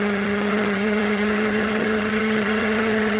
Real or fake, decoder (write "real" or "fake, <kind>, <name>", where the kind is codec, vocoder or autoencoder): fake, vocoder, HiFi-GAN